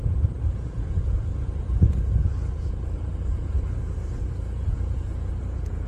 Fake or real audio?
fake